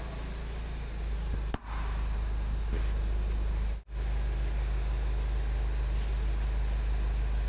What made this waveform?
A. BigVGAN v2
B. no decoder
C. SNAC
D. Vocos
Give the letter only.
B